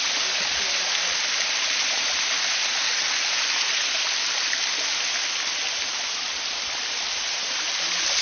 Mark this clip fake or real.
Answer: real